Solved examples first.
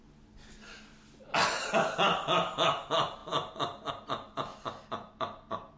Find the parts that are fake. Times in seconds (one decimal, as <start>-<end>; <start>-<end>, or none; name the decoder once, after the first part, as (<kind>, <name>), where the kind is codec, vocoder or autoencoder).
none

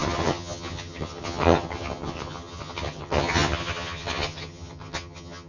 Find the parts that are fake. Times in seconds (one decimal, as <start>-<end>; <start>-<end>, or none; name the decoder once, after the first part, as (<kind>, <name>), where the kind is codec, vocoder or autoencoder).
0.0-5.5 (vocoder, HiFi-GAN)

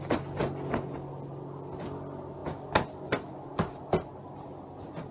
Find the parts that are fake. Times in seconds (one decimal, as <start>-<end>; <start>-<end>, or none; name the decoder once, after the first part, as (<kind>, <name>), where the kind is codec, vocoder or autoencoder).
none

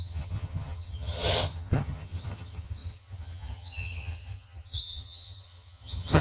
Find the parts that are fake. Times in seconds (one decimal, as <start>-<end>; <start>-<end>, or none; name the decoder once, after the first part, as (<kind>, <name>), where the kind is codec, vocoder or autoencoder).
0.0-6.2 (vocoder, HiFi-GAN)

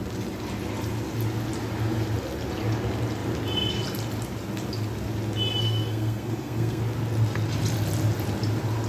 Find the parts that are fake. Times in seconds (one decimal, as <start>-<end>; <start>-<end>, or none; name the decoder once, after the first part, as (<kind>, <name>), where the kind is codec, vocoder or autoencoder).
5.6-6.8 (codec, SNAC)

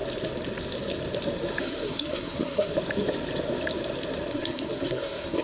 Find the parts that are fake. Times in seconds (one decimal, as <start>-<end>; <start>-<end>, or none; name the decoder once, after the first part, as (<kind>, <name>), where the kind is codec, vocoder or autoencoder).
1.6-2.7 (codec, SNAC); 4.3-5.4